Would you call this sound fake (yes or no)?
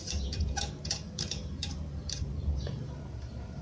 yes